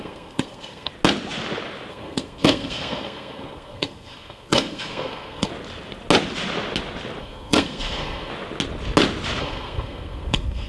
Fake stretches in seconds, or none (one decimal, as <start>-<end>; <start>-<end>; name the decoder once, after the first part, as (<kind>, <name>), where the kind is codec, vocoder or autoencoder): 0.0-0.9 (codec, SNAC); 1.9-5.5; 7.2-8.3; 9.4-10.7